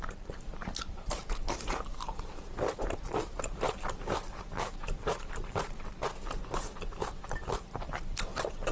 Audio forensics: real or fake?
fake